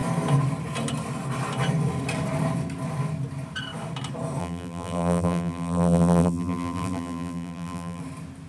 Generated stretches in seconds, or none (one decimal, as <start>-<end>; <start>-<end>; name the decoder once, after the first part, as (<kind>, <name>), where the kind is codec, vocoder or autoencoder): 4.4-8.0 (vocoder, BigVGAN v2)